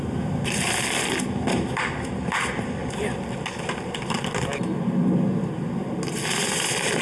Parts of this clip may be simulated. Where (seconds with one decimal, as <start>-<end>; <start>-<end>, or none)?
none